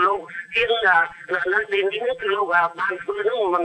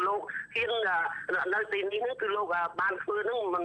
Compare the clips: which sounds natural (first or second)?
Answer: second